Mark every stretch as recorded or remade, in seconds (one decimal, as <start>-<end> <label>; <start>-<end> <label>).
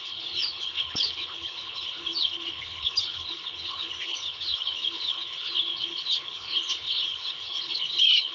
0.0-8.3 remade